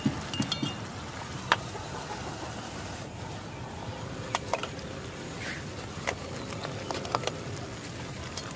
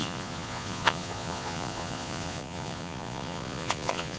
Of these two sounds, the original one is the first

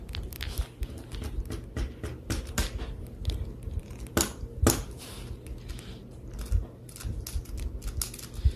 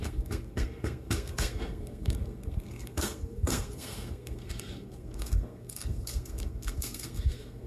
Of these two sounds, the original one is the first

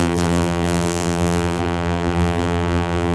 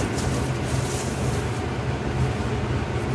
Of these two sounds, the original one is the second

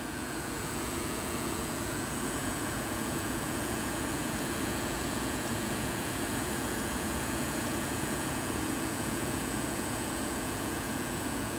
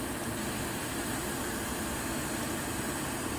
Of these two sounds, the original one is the second